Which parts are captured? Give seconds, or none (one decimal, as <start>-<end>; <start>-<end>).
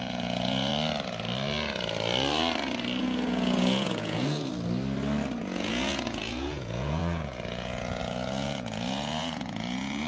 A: 0.7-3.0; 4.5-5.4